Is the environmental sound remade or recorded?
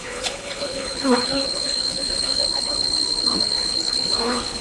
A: remade